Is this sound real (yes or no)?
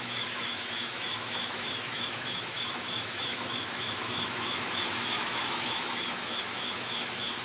no